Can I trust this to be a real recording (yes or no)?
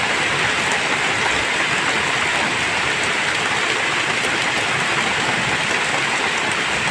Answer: yes